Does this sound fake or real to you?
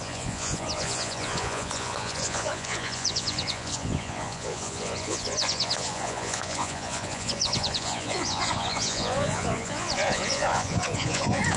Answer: fake